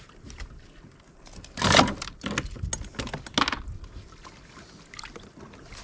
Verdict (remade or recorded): recorded